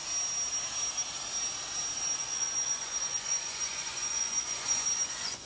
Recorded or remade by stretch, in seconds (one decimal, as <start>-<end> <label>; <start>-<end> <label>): 0.0-2.2 recorded; 2.2-5.5 remade